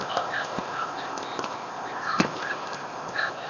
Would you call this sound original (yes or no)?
no